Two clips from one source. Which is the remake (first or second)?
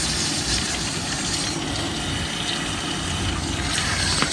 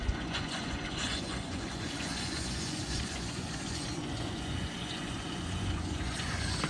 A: second